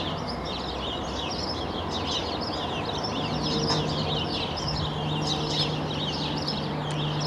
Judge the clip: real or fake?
real